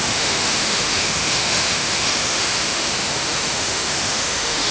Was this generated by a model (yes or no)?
yes